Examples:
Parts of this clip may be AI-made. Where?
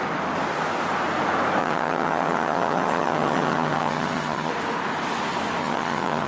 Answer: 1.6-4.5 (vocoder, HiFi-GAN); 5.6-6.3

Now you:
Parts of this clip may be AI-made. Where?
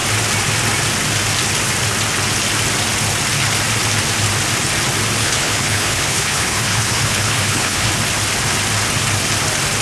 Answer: 5.2-7.9 (codec, HILCodec)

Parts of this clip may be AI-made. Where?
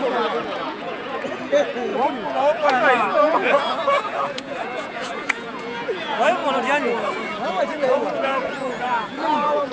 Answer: 0.0-6.4 (vocoder, Vocos); 7.6-9.7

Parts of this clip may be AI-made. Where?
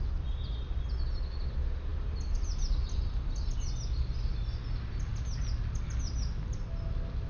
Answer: none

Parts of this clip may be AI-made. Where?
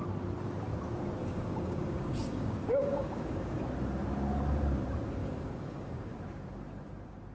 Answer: 1.2-3.6 (codec, DAC); 5.2-6.1